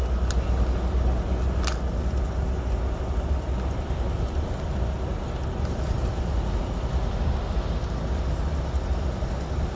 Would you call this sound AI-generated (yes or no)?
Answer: no